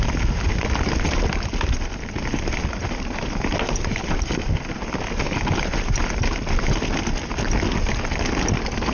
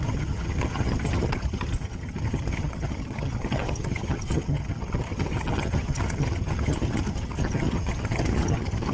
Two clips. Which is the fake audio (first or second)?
second